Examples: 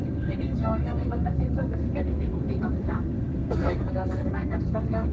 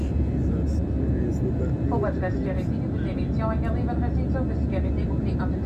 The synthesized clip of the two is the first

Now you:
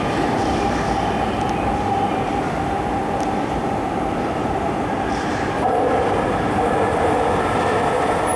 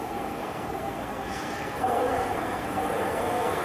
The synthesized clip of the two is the second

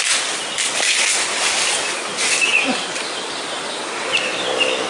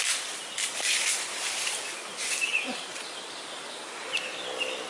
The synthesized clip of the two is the second